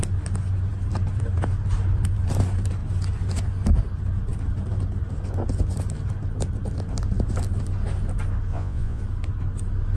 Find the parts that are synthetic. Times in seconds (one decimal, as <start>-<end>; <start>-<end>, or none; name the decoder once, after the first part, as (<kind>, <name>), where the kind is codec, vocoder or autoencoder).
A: 8.5-9.0 (vocoder, Vocos)